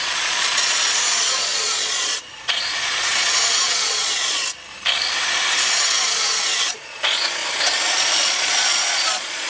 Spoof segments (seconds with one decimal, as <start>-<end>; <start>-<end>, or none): 0.0-4.4; 6.7-7.4; 7.9-9.5

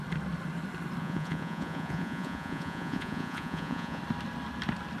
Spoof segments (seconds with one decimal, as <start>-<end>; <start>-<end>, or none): 1.0-4.0

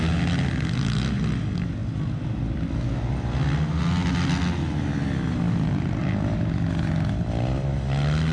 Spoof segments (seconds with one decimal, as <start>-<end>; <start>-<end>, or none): none

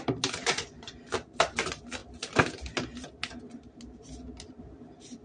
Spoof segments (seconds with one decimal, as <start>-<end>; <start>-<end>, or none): 0.4-1.0

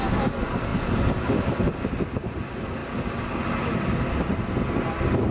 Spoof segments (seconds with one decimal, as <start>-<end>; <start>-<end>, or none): none

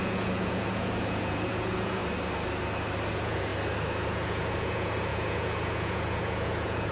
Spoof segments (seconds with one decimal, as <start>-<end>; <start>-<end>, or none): 0.0-2.0; 3.1-3.5; 4.0-6.9

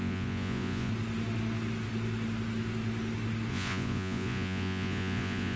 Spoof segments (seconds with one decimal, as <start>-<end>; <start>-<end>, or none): 0.0-0.9; 3.5-5.6

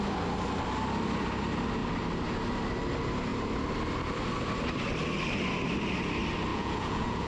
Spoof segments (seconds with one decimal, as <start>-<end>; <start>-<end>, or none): 6.5-7.3